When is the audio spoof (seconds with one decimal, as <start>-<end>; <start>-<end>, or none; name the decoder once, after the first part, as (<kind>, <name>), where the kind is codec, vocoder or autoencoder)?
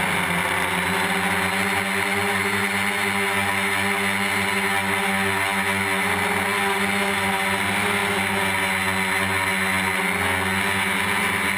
none